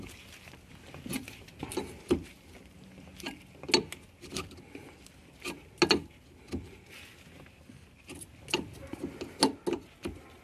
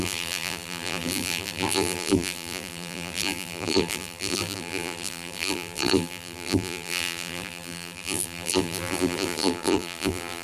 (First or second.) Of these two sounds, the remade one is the second